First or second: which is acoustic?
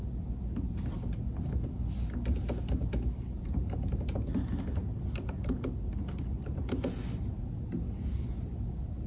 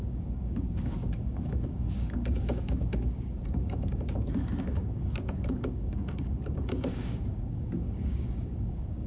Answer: first